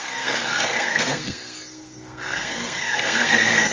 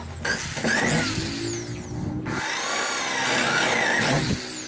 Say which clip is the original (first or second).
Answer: second